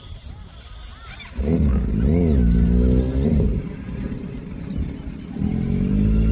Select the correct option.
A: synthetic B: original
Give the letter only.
B